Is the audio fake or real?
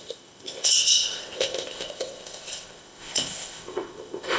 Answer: fake